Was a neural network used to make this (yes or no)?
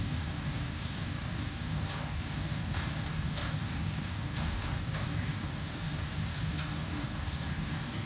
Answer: yes